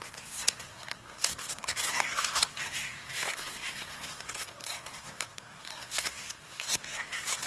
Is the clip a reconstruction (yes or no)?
yes